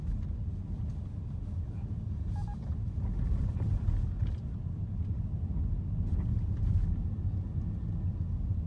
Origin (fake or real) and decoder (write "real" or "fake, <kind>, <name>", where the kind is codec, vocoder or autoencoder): real